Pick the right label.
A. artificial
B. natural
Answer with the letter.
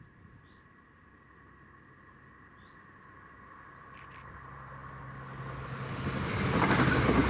B